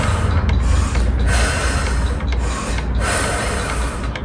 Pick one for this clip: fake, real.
real